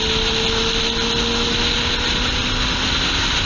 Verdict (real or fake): real